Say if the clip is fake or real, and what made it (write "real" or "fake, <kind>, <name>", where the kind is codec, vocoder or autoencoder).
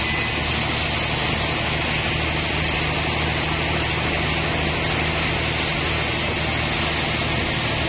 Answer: real